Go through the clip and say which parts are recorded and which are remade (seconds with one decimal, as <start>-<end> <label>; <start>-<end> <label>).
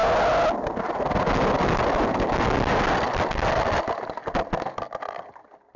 0.0-5.8 recorded